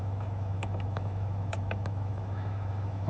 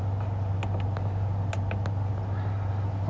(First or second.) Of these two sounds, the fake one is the first